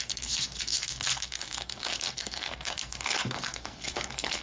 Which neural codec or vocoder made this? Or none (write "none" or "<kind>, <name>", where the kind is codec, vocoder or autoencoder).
codec, SNAC